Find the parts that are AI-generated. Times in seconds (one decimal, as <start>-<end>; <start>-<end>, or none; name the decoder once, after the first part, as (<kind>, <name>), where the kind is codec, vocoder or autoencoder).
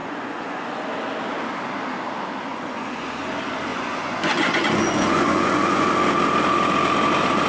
0.0-0.8 (vocoder, Vocos); 2.5-3.3; 3.7-5.9